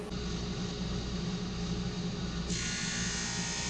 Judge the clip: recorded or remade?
recorded